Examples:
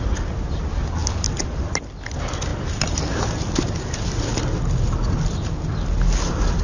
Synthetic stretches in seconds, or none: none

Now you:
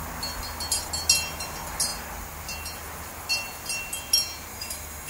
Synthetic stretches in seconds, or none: 4.5-5.1 (autoencoder, DAC-VAE)

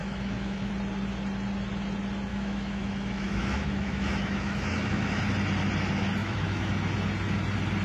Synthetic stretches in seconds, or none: 0.0-0.7 (autoencoder, DAC-VAE); 2.3-5.2; 6.2-6.7

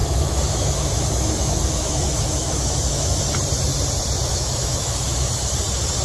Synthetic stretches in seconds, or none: 0.0-3.2 (autoencoder, DAC-VAE); 4.3-5.3

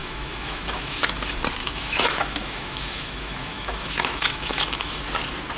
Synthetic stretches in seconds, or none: 0.0-1.0 (autoencoder, DAC-VAE); 1.6-5.0

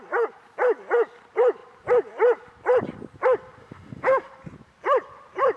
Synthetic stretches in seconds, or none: 3.6-4.3 (autoencoder, DAC-VAE)

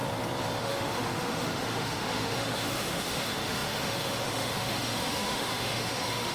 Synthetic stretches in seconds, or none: 0.6-6.3 (autoencoder, DAC-VAE)

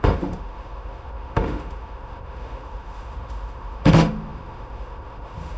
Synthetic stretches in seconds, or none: 0.0-5.6 (autoencoder, DAC-VAE)